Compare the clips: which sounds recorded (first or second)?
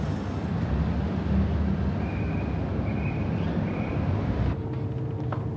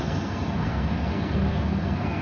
first